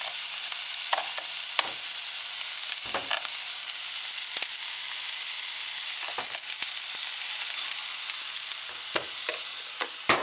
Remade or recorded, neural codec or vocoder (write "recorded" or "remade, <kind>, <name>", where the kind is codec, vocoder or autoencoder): recorded